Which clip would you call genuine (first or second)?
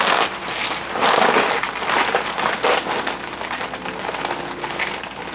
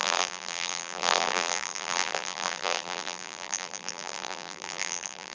first